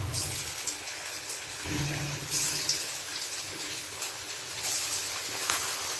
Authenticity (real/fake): fake